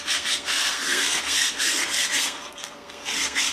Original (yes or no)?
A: no